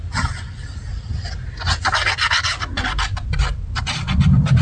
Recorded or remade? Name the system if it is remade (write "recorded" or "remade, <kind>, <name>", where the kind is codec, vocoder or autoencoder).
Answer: recorded